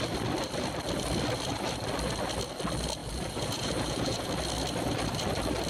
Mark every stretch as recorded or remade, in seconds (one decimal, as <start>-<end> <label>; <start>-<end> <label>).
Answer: 0.0-3.0 recorded; 3.0-4.3 remade; 4.3-5.7 recorded